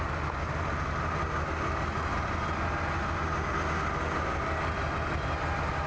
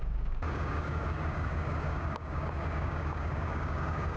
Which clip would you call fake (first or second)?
second